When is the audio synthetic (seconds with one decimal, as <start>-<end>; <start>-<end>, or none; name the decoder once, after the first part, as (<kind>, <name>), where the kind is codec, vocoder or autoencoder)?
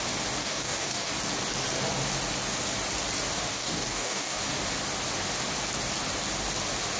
0.4-1.1 (codec, DAC); 3.5-4.4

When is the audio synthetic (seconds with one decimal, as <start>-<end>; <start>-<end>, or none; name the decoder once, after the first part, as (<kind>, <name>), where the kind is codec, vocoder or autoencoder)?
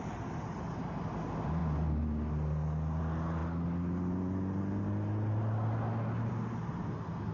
none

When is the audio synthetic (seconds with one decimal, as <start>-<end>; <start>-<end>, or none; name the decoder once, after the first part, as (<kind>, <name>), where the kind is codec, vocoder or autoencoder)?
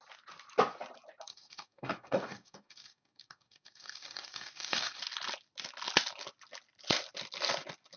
1.3-5.0 (codec, DAC)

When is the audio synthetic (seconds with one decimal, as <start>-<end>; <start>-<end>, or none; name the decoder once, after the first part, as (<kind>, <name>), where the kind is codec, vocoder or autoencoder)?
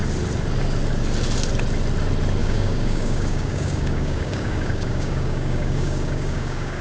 2.4-6.8 (codec, DAC)